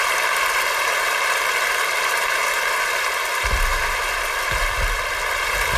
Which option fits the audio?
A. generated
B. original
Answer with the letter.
B